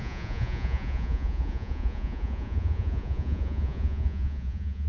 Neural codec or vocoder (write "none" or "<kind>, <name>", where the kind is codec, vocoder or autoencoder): vocoder, Vocos